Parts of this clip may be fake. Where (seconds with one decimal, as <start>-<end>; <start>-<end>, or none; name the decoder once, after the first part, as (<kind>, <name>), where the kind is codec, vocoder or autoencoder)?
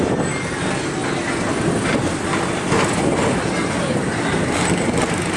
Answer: none